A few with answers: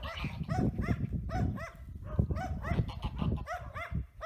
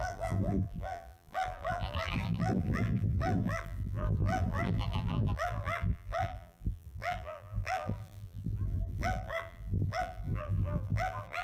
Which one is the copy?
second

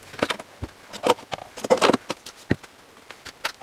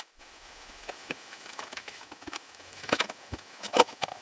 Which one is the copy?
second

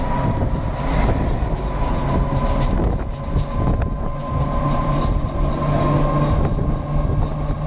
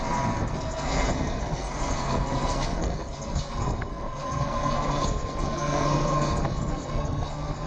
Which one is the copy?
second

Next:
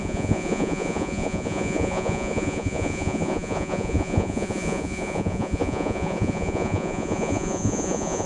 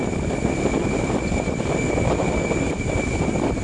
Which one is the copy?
first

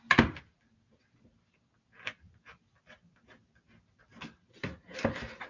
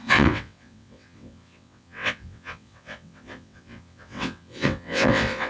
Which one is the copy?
second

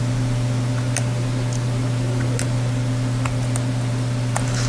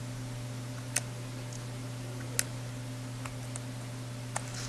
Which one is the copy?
first